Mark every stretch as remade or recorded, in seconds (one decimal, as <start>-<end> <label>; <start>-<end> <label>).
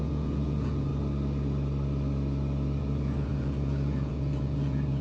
0.0-0.9 remade; 0.9-2.8 recorded; 2.8-5.0 remade